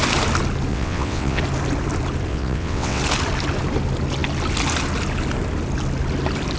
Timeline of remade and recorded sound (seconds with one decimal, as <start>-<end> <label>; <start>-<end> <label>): 0.0-0.7 recorded; 0.7-1.4 remade; 1.4-2.3 recorded; 2.3-3.0 remade; 3.0-6.6 recorded